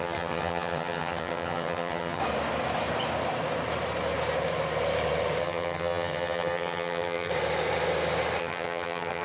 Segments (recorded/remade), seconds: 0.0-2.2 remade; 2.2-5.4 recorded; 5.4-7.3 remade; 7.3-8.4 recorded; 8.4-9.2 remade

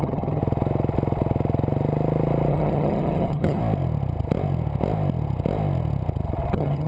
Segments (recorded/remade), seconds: 0.0-0.4 remade; 0.4-2.5 recorded; 2.5-3.6 remade; 3.6-6.5 recorded; 6.5-6.9 remade

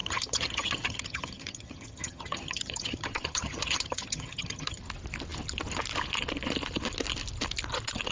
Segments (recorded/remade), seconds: 0.0-4.8 remade; 4.8-8.1 recorded

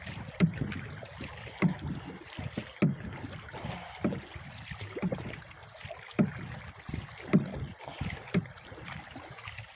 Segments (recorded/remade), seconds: 0.0-9.8 recorded

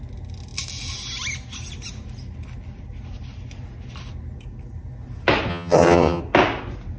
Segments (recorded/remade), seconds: 0.0-5.5 recorded; 5.5-6.2 remade; 6.2-7.0 recorded